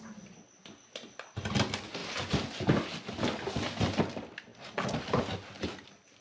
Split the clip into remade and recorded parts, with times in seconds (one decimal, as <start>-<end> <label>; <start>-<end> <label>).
0.0-6.2 recorded